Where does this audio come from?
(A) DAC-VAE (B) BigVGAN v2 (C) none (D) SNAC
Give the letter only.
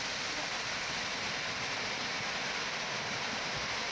C